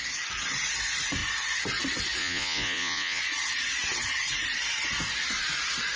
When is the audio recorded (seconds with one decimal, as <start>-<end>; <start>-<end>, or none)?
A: 0.0-2.2; 3.2-6.0

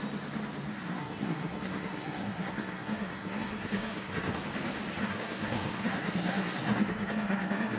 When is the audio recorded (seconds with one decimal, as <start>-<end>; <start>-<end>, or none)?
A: 0.0-0.7; 4.4-5.0

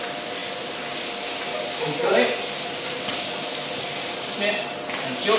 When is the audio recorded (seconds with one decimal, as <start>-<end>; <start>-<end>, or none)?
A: 0.0-5.4

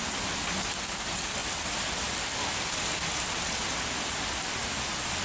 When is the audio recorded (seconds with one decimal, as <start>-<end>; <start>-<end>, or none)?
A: 0.0-5.2

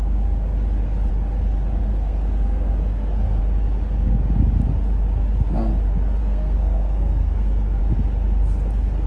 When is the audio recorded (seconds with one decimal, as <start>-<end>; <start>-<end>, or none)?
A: 0.0-1.9; 3.4-6.2; 7.8-9.1

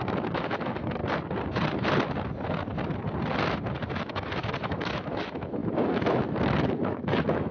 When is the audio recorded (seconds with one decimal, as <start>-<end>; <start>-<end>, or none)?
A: 1.0-3.9

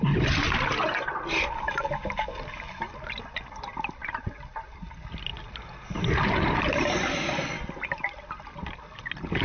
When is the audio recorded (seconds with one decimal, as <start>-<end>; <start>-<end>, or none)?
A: 0.0-9.4

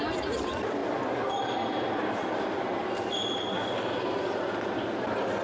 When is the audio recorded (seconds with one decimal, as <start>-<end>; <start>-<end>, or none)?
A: 0.0-5.4